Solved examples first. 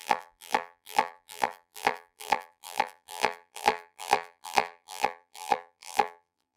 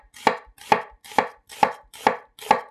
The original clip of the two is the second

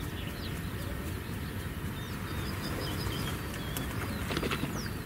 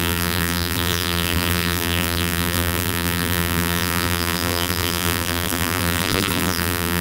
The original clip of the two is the first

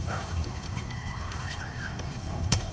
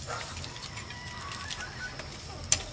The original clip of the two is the second